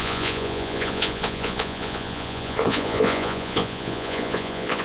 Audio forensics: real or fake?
fake